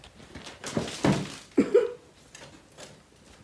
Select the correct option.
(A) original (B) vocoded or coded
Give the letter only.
A